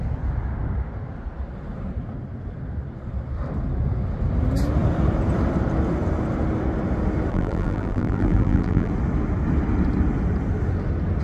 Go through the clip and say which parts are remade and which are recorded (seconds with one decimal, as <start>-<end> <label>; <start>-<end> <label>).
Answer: 0.0-7.3 recorded; 7.3-8.9 remade; 8.9-11.2 recorded